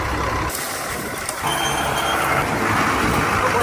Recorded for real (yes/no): yes